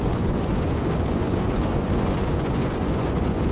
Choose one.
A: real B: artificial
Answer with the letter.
B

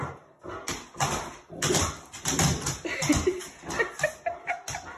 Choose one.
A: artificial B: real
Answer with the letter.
B